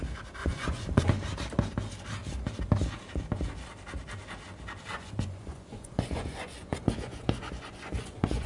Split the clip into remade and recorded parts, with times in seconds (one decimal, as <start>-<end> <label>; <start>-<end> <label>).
0.0-0.4 recorded; 0.4-1.1 remade; 1.1-4.9 recorded; 4.9-8.5 remade